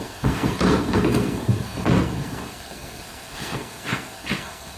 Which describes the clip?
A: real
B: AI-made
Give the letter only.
B